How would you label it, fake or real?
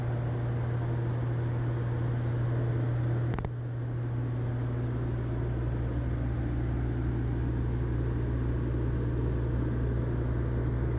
real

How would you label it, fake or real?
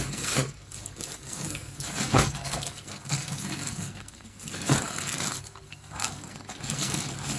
fake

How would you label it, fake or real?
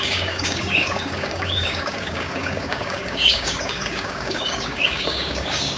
fake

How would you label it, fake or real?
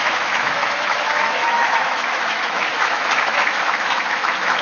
fake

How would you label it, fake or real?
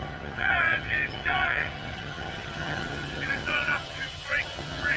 fake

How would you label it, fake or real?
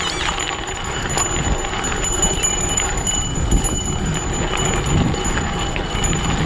real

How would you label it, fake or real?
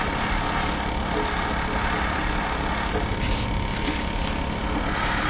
real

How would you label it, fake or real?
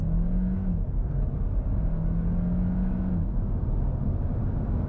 real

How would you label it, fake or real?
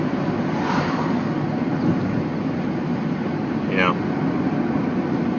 real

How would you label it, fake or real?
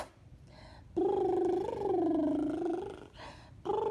real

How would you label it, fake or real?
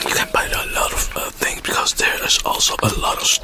real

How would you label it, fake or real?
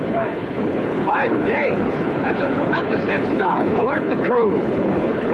fake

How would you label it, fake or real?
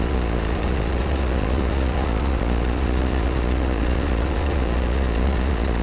fake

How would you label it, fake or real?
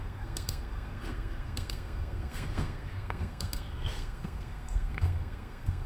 fake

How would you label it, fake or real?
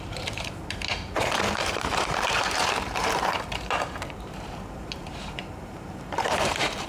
fake